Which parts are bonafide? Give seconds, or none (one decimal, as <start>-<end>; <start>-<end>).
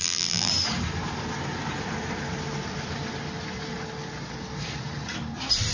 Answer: 0.5-5.7